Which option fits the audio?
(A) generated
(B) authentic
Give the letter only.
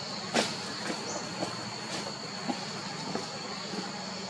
B